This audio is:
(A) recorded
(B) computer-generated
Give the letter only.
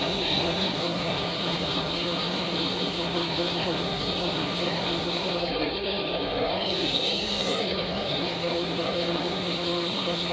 B